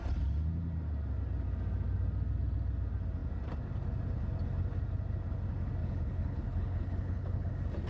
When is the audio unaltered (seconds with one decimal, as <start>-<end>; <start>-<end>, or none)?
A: 0.0-5.8; 7.5-7.9